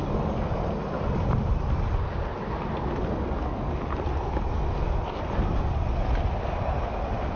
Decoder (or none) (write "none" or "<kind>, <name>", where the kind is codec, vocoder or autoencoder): none